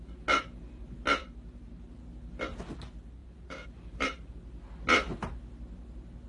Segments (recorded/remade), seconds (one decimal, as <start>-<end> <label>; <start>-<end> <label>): 0.0-1.2 recorded; 1.2-1.9 remade; 1.9-3.2 recorded; 3.2-4.3 remade; 4.3-6.3 recorded